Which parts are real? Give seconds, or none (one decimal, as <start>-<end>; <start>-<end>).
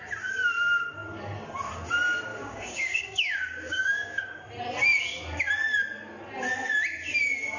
0.0-2.3; 4.4-7.6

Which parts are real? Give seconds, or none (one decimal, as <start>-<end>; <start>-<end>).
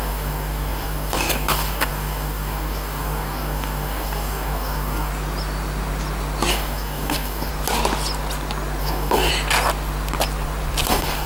5.1-6.5; 7.5-8.8; 9.3-10.9